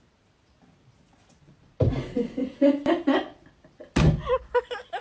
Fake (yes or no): no